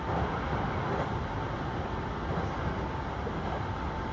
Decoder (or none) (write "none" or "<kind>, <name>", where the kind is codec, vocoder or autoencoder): none